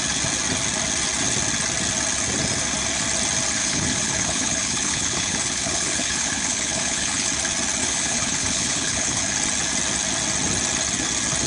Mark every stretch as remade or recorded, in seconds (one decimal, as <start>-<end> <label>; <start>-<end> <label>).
0.0-3.6 recorded; 3.6-7.3 remade; 7.3-7.8 recorded; 7.8-9.2 remade; 9.2-11.5 recorded